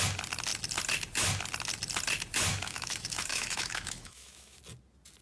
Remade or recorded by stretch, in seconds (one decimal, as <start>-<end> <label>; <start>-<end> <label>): 0.0-2.5 recorded; 2.5-4.6 remade; 4.6-5.2 recorded